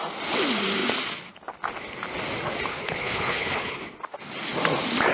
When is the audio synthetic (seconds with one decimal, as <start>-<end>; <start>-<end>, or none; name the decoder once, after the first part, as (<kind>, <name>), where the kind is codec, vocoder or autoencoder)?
2.7-3.8 (codec, HILCodec)